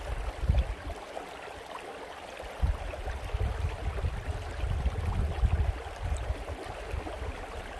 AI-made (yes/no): no